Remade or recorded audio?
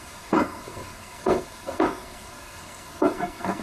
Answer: remade